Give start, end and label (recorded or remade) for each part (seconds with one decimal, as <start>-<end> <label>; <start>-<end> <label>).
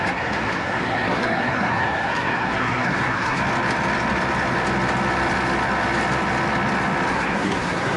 0.0-3.4 remade; 3.4-7.1 recorded; 7.1-8.0 remade